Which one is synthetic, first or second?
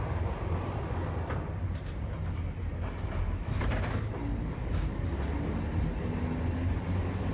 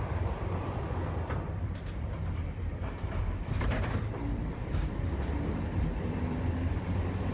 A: second